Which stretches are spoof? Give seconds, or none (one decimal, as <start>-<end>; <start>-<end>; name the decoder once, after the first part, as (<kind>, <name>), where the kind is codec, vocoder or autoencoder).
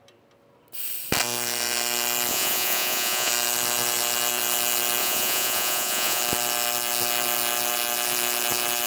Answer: 2.3-3.3 (vocoder, Vocos); 5.0-6.2